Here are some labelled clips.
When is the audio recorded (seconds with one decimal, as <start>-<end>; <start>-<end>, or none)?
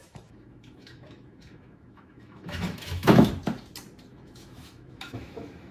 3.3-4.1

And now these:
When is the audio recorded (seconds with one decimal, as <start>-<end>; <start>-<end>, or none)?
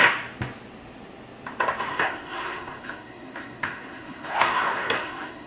0.0-1.9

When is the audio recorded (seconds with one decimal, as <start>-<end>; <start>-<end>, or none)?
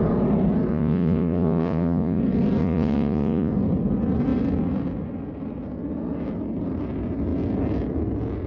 0.0-0.7; 2.2-2.6; 3.5-8.5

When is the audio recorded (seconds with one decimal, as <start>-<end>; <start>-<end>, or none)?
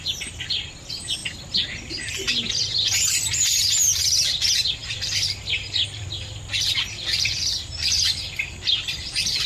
0.0-4.8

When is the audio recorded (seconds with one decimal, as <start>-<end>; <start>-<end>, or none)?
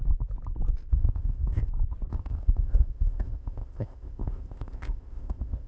0.0-0.9; 1.7-2.1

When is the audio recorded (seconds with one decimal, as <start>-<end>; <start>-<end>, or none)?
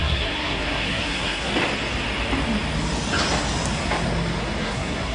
1.5-4.6